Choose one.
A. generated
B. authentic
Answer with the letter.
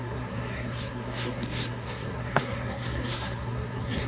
A